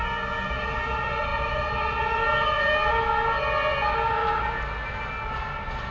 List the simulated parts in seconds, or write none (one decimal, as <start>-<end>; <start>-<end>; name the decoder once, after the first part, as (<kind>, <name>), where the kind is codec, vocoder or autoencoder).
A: none